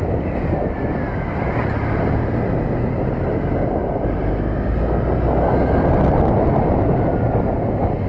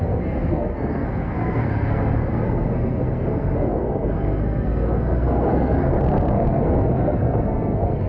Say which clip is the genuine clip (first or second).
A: first